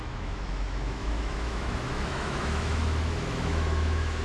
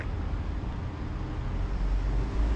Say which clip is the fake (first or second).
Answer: first